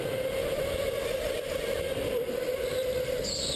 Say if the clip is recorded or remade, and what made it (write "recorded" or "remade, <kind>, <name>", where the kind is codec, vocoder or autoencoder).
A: recorded